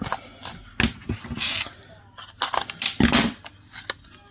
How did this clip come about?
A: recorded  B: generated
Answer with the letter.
A